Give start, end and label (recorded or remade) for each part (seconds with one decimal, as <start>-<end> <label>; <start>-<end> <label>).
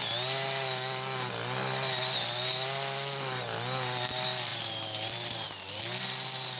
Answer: 0.0-4.5 recorded; 4.5-5.8 remade; 5.8-6.6 recorded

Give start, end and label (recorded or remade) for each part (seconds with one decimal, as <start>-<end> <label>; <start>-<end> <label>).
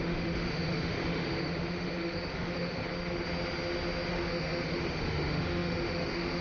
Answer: 0.0-2.8 remade; 2.8-4.1 recorded; 4.1-6.4 remade